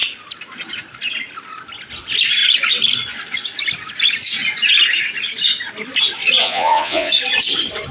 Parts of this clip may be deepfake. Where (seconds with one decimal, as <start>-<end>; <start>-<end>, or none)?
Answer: 6.4-7.1